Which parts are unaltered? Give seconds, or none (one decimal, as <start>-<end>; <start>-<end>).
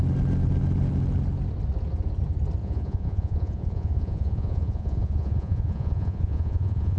0.0-2.6